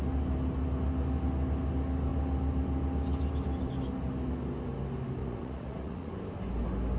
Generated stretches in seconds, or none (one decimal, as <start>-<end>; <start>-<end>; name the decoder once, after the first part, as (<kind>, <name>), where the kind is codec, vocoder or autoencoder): 5.2-6.1 (vocoder, Vocos)